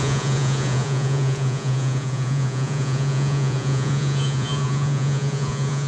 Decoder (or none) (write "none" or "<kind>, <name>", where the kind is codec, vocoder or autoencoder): vocoder, Vocos